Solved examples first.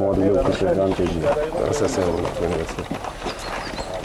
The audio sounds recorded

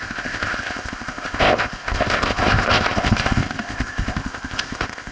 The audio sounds remade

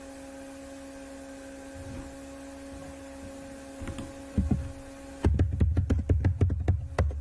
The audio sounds recorded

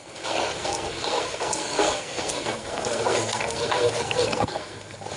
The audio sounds remade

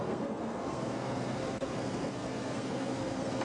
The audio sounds remade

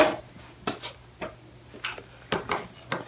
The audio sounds recorded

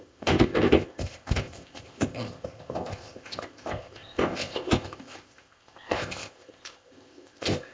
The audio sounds remade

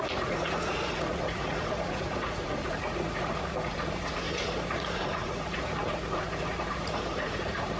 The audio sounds remade